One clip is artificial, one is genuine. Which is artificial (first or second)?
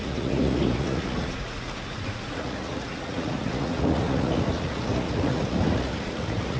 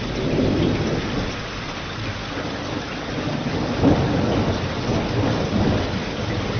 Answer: first